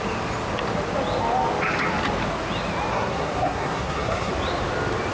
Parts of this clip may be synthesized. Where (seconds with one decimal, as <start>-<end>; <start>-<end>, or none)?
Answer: 2.9-4.3